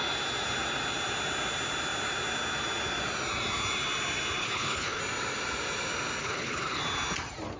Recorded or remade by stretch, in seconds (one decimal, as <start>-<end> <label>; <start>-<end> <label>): 0.0-4.4 recorded; 4.4-5.0 remade; 5.0-6.2 recorded; 6.2-6.8 remade; 6.8-7.6 recorded